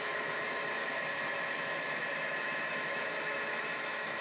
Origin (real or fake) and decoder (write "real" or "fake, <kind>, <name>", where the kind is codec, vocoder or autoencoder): fake, autoencoder, DAC-VAE